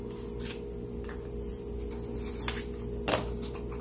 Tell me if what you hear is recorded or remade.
recorded